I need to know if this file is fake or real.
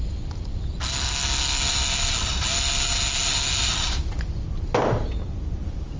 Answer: real